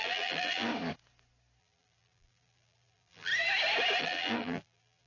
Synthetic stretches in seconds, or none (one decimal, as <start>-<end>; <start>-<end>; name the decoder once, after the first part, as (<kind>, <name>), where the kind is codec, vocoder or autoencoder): 0.0-0.7 (vocoder, BigVGAN v2); 1.6-3.3; 4.0-5.1